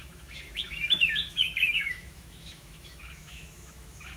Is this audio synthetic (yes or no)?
yes